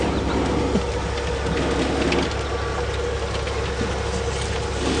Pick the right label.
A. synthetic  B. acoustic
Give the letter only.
B